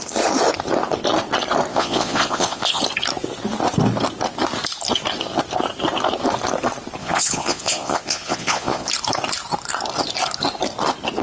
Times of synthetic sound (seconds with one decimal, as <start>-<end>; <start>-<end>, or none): 1.7-2.8; 7.0-8.9